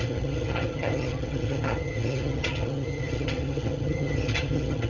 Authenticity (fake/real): fake